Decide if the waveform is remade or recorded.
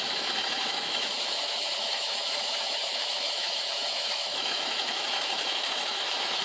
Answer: remade